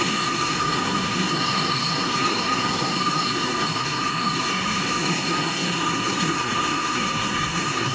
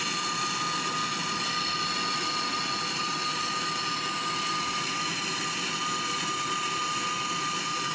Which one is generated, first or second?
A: first